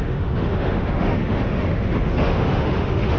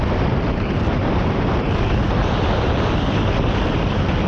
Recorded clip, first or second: second